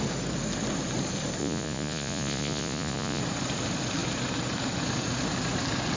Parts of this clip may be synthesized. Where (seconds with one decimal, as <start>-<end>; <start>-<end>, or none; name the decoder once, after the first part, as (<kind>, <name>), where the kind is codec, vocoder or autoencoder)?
1.4-3.2 (vocoder, Vocos)